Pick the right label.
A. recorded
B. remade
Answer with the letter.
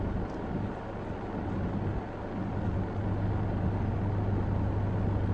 A